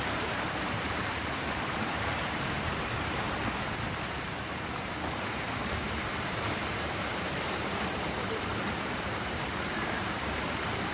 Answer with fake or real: fake